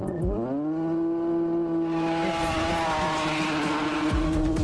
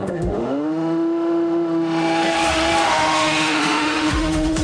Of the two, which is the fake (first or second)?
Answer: second